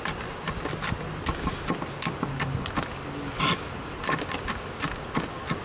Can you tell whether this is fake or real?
real